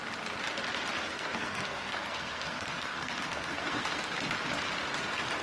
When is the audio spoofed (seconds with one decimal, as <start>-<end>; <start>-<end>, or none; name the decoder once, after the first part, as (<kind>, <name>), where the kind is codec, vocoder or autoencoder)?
1.0-4.2 (codec, SNAC)